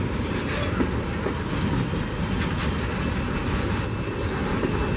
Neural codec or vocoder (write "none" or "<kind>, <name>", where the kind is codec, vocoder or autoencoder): none